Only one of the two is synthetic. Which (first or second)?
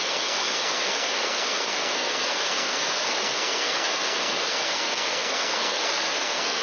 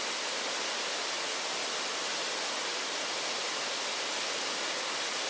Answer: first